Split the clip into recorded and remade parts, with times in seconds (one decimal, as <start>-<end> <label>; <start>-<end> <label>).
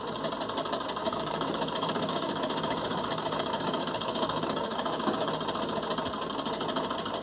0.0-1.0 recorded; 1.0-5.3 remade; 5.3-7.2 recorded